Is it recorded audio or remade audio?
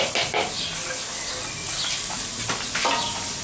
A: recorded